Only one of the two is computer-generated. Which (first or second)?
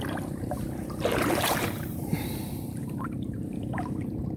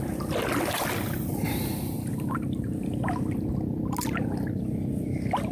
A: first